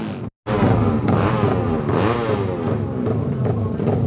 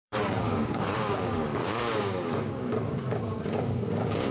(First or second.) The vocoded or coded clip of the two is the second